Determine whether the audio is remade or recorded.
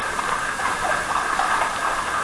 recorded